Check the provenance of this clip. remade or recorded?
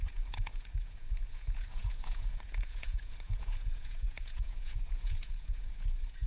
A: remade